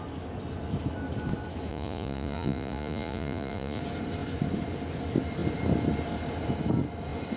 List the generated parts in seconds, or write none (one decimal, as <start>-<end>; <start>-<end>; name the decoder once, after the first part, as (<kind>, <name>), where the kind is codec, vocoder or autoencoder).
1.7-3.8 (vocoder, Vocos)